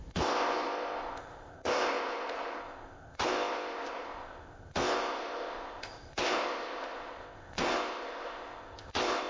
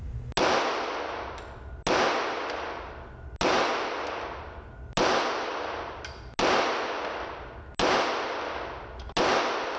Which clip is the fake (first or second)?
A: first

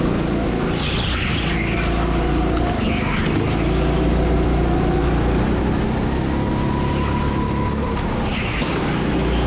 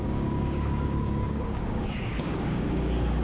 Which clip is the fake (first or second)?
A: second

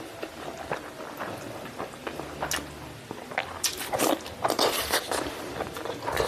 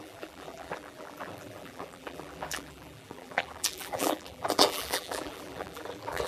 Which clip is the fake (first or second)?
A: second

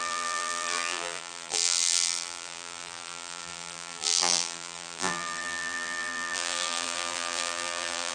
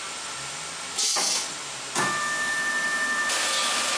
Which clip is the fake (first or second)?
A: first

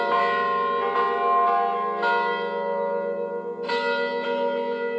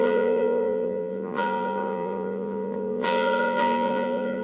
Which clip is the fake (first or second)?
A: second